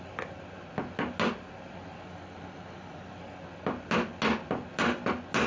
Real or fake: real